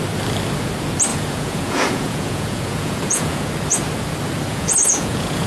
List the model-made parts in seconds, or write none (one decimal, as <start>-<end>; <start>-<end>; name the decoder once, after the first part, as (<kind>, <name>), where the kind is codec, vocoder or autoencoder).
1.1-3.5 (vocoder, Vocos); 4.5-5.5